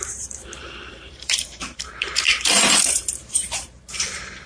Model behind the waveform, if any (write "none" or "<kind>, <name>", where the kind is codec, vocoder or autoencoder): vocoder, BigVGAN v2